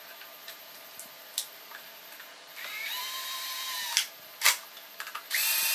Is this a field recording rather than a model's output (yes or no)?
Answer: no